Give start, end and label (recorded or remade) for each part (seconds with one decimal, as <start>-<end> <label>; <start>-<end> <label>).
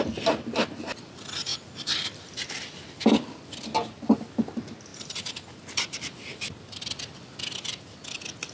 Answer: 0.0-8.5 recorded